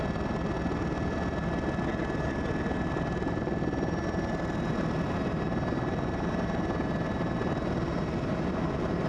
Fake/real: real